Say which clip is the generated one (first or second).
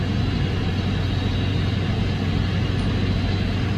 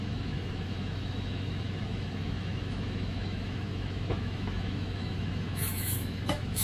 second